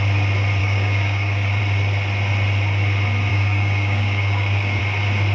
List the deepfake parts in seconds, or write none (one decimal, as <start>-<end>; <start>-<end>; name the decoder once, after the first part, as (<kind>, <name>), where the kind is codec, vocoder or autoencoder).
0.6-1.6 (codec, DAC); 3.3-4.8